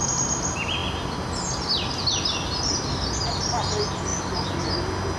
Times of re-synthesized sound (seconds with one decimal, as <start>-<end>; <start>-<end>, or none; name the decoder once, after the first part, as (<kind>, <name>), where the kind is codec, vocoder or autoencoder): none